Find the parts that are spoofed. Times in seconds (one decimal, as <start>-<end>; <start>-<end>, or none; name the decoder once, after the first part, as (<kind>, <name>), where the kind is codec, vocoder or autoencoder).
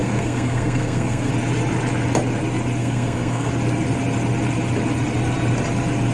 0.0-1.3 (codec, SNAC); 2.8-3.5